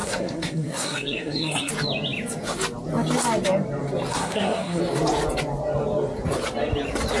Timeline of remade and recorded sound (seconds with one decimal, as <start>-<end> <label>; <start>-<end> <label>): 0.0-1.7 remade; 1.7-4.1 recorded; 4.1-4.8 remade; 4.8-7.2 recorded